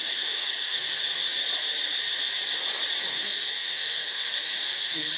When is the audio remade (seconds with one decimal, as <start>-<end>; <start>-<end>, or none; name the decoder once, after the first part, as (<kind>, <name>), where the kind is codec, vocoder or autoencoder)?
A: 0.0-1.0 (codec, SNAC); 3.1-5.2